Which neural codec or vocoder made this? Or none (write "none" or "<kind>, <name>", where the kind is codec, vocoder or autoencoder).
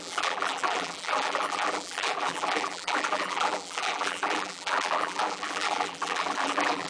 vocoder, BigVGAN v2